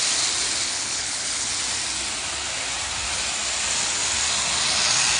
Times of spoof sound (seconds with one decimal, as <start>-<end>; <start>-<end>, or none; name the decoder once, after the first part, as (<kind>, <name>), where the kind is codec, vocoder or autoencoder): 0.6-1.5 (codec, HILCodec)